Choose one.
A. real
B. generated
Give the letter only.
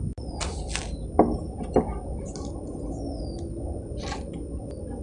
A